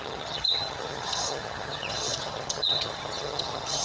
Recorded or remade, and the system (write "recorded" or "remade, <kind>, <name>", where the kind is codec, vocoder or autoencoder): remade, vocoder, HiFi-GAN